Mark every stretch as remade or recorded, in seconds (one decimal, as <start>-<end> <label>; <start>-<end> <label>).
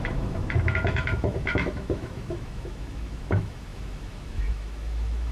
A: 0.0-5.3 remade